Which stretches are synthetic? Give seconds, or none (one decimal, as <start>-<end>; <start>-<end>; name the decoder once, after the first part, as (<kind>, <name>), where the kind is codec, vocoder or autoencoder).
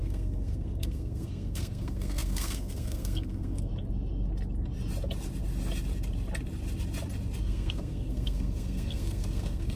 0.0-3.7 (codec, SNAC); 7.4-9.8